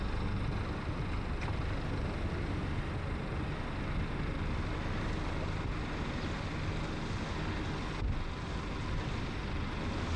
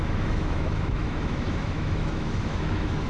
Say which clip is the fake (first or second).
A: second